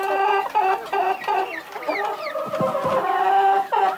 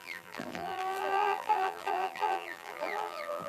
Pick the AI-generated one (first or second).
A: second